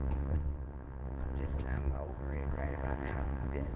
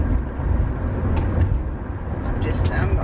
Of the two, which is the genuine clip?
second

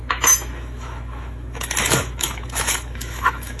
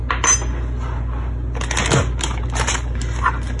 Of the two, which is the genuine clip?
second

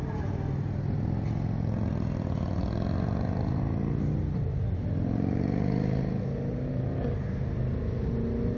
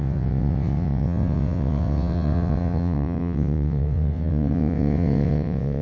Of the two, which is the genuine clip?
first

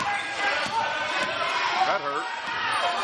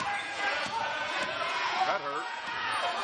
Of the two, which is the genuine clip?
first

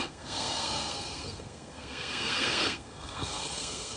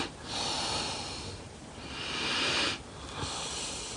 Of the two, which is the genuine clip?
second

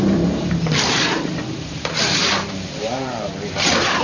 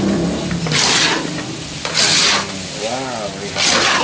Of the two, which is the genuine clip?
second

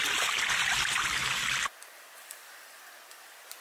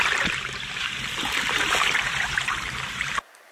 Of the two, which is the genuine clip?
first